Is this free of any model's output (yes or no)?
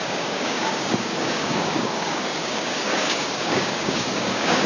no